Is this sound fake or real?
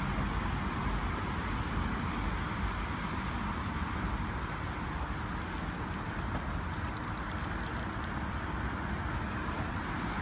real